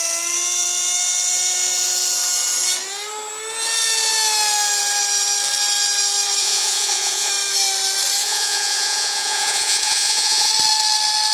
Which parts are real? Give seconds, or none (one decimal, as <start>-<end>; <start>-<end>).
0.0-6.4; 7.3-8.2; 10.5-11.3